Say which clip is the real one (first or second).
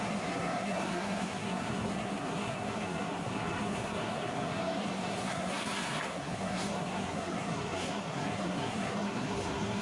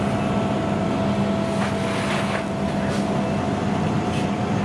second